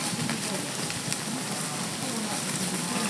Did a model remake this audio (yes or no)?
no